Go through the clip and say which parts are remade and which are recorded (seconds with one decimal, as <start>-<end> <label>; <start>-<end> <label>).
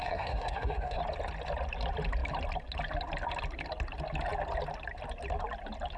0.0-1.0 remade; 1.0-6.0 recorded